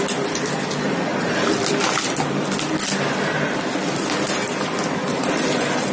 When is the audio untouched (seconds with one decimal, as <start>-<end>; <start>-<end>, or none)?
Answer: 0.0-1.1; 1.8-5.9